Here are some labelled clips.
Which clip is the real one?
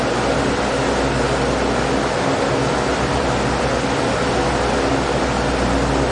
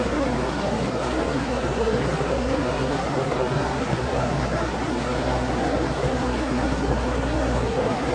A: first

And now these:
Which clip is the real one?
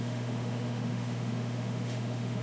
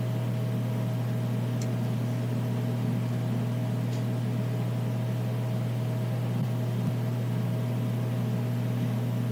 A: second